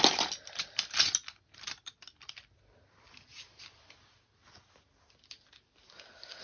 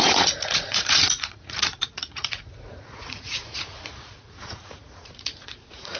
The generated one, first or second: second